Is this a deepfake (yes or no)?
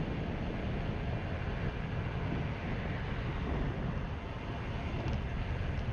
no